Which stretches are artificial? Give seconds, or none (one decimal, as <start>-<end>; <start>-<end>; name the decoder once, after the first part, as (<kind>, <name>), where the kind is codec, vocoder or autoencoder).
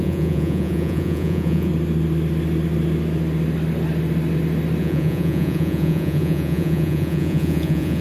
0.0-1.7 (vocoder, Vocos); 4.8-8.0